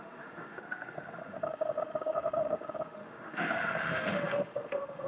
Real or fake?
fake